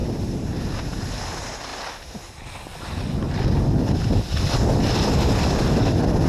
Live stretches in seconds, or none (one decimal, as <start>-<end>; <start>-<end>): 0.0-6.3